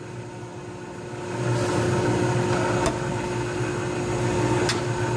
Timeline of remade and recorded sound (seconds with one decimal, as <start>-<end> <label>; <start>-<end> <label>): 0.0-5.2 recorded